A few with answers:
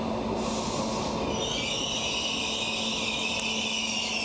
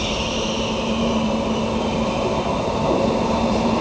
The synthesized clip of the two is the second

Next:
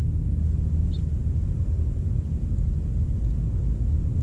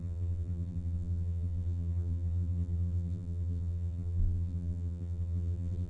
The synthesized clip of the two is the second